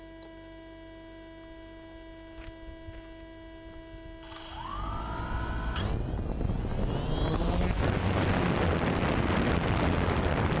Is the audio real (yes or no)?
yes